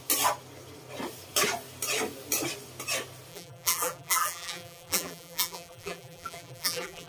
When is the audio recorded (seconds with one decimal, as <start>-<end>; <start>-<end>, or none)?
0.0-3.3